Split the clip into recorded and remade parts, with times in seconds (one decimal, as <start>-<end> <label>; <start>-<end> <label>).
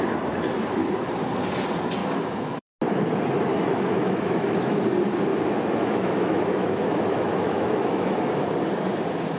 0.0-2.0 recorded; 2.0-2.7 remade; 2.7-3.5 recorded; 3.5-4.8 remade; 4.8-5.3 recorded; 5.3-8.2 remade; 8.2-9.4 recorded